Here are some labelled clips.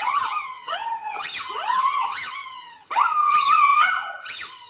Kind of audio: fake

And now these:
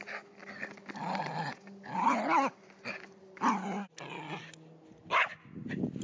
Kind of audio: real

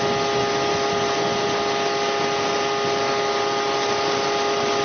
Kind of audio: real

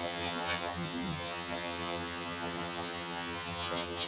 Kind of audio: fake